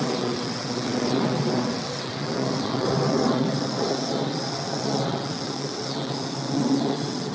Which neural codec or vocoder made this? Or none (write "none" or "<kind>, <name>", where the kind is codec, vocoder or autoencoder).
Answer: vocoder, WaveNeXt